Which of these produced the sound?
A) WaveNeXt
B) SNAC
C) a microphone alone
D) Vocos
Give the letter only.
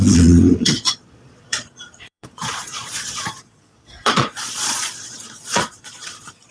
D